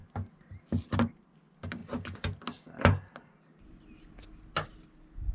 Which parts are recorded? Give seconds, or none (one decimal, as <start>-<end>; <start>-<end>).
0.0-5.3